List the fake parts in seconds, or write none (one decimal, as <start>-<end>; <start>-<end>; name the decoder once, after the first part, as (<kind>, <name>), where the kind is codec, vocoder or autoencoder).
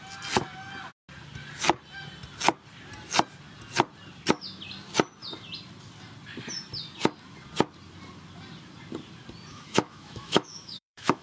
9.5-11.2 (autoencoder, DAC-VAE)